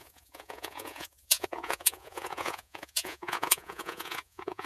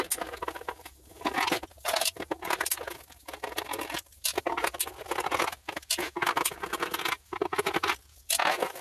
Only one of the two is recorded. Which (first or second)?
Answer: second